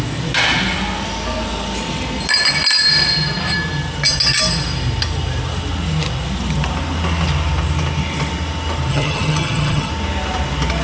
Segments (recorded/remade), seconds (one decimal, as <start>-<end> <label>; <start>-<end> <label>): 0.0-8.9 recorded; 8.9-9.9 remade; 9.9-10.8 recorded